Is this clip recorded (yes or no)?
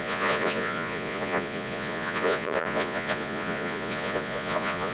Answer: no